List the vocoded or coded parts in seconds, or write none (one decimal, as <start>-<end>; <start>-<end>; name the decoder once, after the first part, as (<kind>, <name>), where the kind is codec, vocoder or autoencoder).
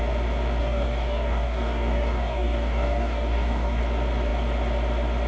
0.6-3.8 (codec, DAC)